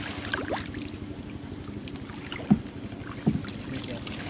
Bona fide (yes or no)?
yes